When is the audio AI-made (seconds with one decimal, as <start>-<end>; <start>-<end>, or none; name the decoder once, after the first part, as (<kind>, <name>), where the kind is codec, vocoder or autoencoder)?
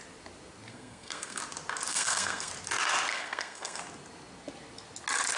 0.7-1.4 (codec, SNAC); 1.9-2.5; 3.1-3.8